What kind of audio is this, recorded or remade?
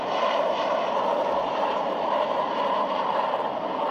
remade